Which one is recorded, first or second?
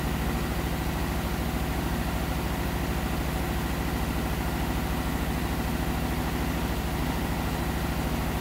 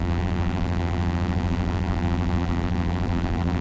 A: first